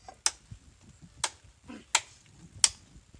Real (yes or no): yes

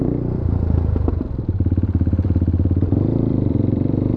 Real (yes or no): no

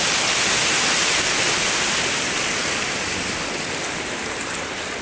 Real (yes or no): yes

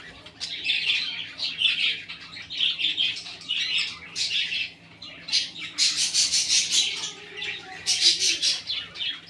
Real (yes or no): yes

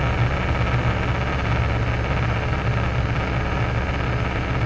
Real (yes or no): yes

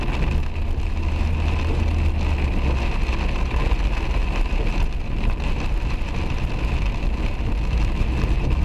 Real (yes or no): yes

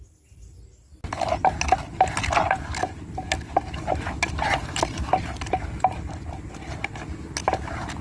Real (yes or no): yes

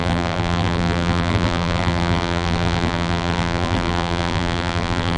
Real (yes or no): no